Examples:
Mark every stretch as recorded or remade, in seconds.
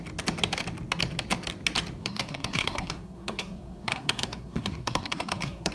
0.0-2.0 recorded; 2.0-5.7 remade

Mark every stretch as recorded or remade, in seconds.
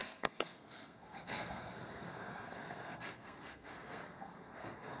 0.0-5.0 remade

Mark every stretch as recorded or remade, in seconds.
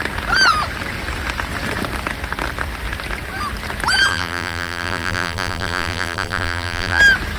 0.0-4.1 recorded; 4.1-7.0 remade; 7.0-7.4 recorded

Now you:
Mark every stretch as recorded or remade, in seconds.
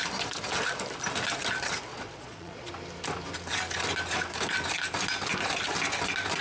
0.0-1.9 recorded; 1.9-2.7 remade; 2.7-6.4 recorded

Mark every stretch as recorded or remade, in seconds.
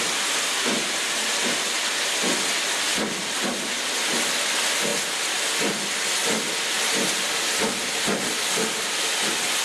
0.0-2.9 recorded; 2.9-4.3 remade; 4.3-9.6 recorded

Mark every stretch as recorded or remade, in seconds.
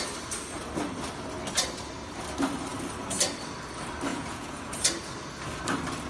0.0-4.1 recorded; 4.1-4.7 remade; 4.7-6.1 recorded